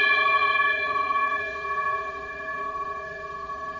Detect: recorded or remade remade